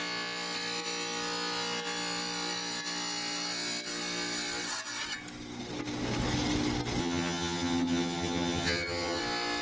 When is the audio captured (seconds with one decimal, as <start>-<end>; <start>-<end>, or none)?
0.0-7.0; 9.2-9.6